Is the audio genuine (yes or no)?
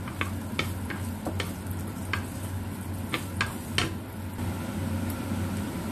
yes